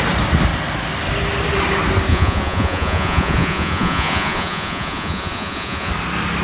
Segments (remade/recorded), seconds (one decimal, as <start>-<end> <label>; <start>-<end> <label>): 0.0-2.1 recorded; 2.1-5.9 remade; 5.9-6.4 recorded